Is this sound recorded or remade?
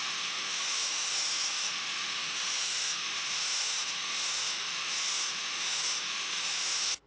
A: remade